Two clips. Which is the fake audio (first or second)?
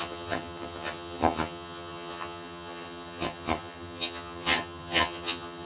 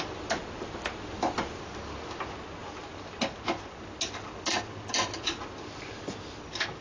first